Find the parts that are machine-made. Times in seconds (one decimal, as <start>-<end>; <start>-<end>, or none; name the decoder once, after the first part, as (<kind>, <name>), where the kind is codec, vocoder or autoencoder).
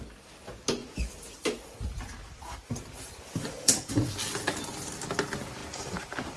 0.8-4.6 (vocoder, BigVGAN v2); 5.6-6.4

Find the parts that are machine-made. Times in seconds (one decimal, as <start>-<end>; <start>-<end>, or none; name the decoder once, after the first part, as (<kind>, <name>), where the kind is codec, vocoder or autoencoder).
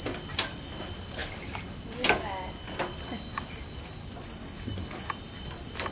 none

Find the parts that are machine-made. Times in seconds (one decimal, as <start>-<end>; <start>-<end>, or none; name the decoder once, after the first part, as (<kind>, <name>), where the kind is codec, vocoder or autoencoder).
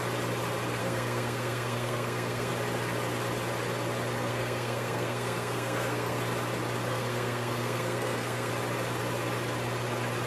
0.8-2.5 (codec, SNAC); 4.3-6.2; 6.9-8.5